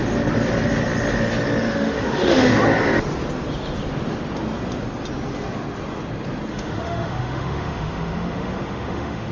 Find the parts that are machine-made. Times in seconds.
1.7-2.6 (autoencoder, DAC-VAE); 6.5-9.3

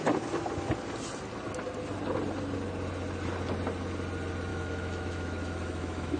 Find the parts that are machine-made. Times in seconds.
4.5-6.2 (autoencoder, DAC-VAE)

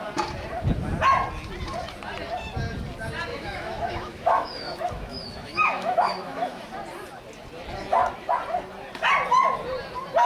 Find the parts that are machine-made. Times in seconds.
3.3-6.6 (autoencoder, DAC-VAE)

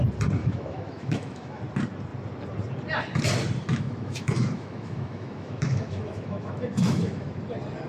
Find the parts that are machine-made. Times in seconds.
0.4-1.6 (autoencoder, DAC-VAE); 3.7-7.3

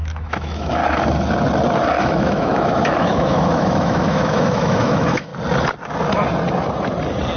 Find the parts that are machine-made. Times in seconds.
0.0-0.8 (autoencoder, DAC-VAE); 2.0-5.3

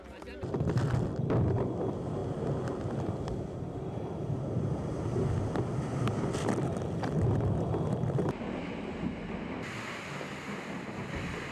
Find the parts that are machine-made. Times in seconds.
none

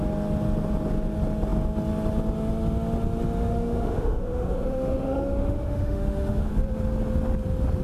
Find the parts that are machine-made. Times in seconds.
3.5-6.5 (autoencoder, DAC-VAE)